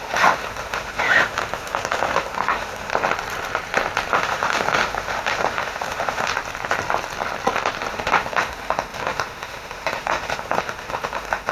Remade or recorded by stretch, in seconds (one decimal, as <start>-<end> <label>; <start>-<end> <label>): 0.0-2.9 remade; 2.9-4.1 recorded; 4.1-6.3 remade; 6.3-7.9 recorded; 7.9-11.5 remade